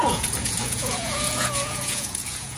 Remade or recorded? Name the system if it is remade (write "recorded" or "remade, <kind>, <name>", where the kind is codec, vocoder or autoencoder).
remade, vocoder, Vocos